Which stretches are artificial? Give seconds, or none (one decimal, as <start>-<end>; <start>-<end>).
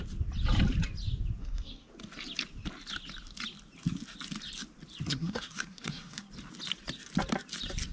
1.4-1.9; 5.1-6.3